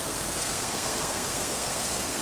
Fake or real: fake